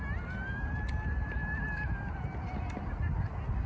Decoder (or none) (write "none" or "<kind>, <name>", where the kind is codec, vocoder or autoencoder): none